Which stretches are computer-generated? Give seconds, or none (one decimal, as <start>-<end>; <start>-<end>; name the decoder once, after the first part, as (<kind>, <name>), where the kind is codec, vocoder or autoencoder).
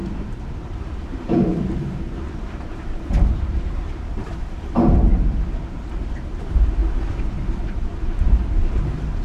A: 0.0-5.1 (vocoder, BigVGAN v2); 6.0-6.8; 7.7-9.2